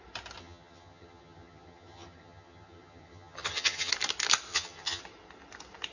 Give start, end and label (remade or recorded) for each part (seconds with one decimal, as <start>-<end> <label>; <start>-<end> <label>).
0.0-0.4 recorded; 0.4-3.9 remade; 3.9-4.5 recorded; 4.5-5.0 remade; 5.0-5.9 recorded